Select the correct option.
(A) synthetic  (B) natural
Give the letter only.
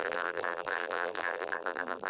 A